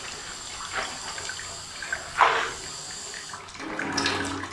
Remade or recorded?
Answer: recorded